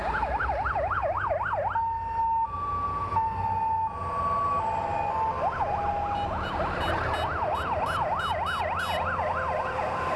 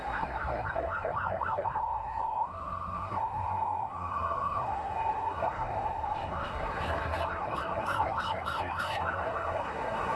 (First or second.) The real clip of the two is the first